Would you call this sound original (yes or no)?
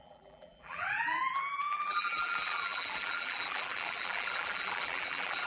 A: no